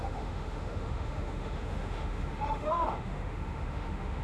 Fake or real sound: fake